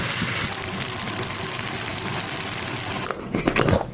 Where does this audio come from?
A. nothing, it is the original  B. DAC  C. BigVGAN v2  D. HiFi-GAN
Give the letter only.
C